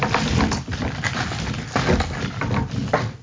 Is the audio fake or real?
real